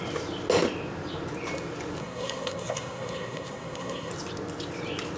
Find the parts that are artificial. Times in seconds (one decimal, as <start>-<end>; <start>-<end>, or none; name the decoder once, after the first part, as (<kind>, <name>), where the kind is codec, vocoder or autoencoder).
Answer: 2.0-4.1 (codec, SNAC)